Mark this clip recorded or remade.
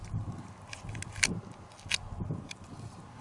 recorded